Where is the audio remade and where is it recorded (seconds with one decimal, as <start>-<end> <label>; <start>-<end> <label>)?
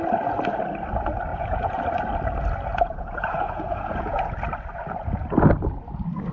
0.0-1.3 recorded; 1.3-1.8 remade; 1.8-2.7 recorded; 2.7-4.3 remade; 4.3-6.3 recorded